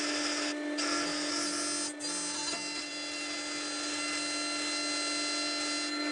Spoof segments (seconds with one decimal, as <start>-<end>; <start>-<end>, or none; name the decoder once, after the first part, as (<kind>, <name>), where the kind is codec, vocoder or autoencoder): none

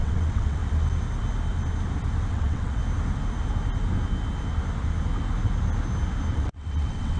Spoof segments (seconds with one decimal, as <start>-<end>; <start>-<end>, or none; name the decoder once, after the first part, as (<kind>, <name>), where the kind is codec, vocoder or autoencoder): 0.0-0.6 (vocoder, WaveNeXt); 2.3-2.8; 6.3-7.2

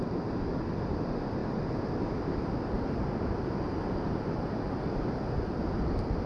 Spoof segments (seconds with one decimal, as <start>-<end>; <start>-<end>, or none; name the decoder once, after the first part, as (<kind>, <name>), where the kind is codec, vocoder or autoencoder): 1.4-5.2 (vocoder, BigVGAN v2)

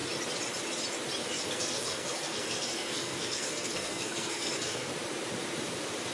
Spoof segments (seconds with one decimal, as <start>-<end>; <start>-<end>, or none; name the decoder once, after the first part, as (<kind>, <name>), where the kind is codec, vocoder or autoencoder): 1.2-4.9 (codec, SNAC)

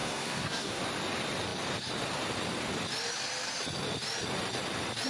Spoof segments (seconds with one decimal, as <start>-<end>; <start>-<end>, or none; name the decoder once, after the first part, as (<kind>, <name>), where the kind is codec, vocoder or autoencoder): 0.0-0.8 (codec, SNAC)